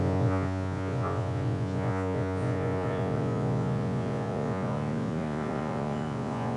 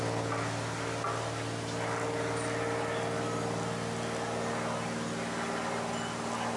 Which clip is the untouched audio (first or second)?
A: second